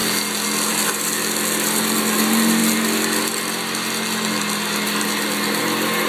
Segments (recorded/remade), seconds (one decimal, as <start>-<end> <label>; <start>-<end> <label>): 0.0-6.1 recorded